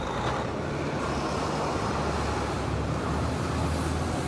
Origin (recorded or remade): recorded